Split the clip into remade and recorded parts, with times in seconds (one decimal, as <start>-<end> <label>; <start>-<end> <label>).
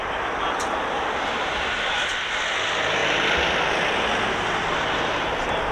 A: 0.0-5.7 recorded